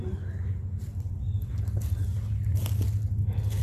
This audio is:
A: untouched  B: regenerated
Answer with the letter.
A